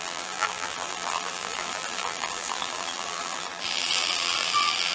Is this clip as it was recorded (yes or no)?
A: no